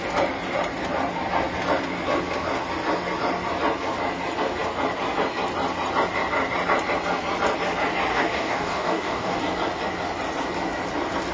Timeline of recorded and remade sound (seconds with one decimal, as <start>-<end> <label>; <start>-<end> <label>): 0.0-8.1 recorded; 8.1-9.4 remade; 9.4-11.3 recorded